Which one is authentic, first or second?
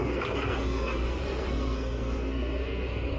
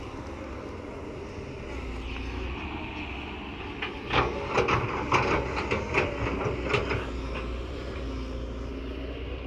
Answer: second